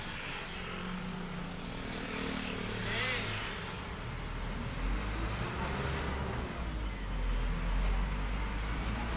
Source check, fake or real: real